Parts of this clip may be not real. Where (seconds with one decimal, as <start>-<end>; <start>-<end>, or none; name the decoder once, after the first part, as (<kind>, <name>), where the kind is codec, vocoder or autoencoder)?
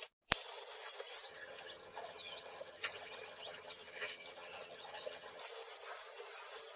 1.3-5.4 (vocoder, HiFi-GAN)